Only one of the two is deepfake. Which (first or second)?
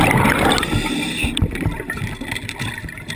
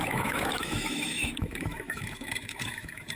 second